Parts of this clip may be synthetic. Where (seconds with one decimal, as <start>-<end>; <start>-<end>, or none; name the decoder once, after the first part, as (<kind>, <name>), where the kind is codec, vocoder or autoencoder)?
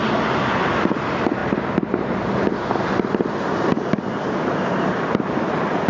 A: none